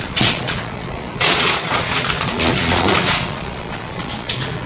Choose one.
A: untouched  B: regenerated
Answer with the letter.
B